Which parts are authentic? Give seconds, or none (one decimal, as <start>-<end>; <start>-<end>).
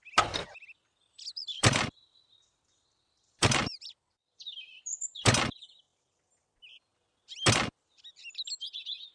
0.0-1.5; 5.2-9.1